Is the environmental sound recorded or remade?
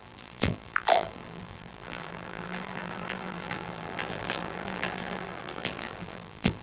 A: remade